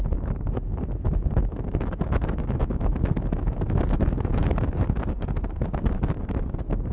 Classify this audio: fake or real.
fake